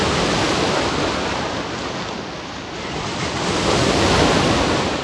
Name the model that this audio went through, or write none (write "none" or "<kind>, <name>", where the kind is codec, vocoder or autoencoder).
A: none